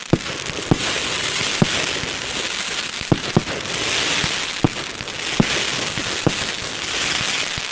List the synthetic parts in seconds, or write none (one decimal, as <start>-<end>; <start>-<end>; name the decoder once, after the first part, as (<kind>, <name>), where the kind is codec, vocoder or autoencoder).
none